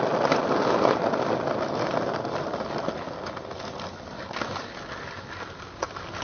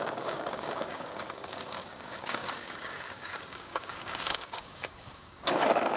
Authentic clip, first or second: first